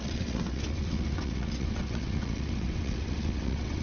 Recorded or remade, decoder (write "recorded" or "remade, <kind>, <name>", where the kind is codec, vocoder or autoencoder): remade, vocoder, WaveNeXt